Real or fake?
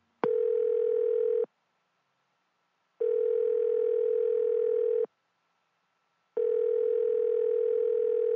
real